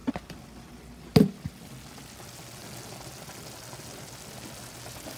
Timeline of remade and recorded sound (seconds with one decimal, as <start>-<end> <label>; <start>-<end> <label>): 0.0-5.2 recorded